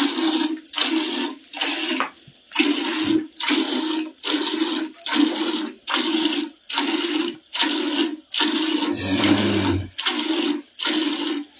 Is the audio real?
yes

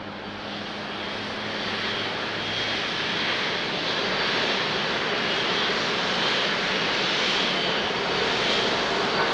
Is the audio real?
yes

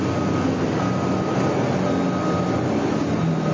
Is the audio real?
yes